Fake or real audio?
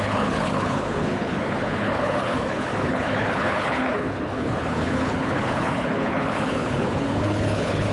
fake